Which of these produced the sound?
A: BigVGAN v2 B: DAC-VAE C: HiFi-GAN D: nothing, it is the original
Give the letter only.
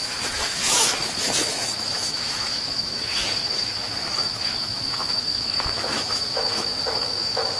B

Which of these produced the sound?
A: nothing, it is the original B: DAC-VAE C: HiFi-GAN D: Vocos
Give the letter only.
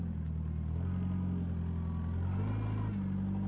A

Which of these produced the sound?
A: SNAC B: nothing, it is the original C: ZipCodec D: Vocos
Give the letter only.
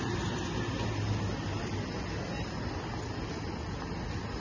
B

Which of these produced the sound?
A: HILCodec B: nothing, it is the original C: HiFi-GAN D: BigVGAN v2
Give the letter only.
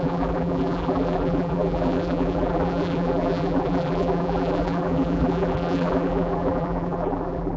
D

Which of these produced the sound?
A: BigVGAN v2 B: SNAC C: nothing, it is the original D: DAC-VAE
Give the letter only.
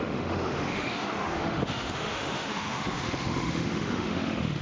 D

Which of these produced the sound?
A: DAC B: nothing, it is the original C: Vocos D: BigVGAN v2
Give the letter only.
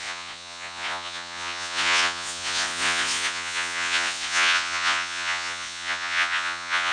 C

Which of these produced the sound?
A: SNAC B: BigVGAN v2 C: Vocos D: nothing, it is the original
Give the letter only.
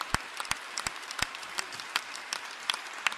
B